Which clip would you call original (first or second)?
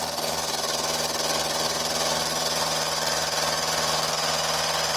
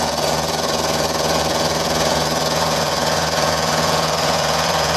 first